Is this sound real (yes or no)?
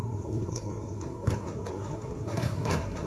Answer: no